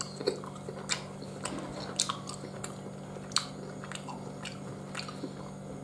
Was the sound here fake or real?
real